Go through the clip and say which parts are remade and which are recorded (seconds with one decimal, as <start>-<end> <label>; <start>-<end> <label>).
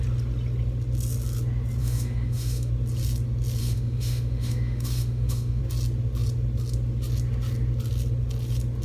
0.0-1.8 recorded; 1.8-2.7 remade; 2.7-3.6 recorded; 3.6-5.6 remade; 5.6-8.8 recorded